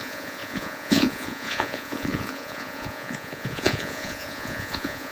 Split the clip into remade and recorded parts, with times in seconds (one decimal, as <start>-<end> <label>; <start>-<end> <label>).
0.0-5.1 remade